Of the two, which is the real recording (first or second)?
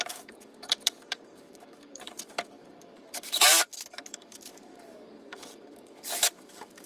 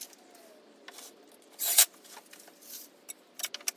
second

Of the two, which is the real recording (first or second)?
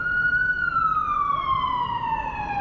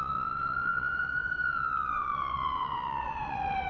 first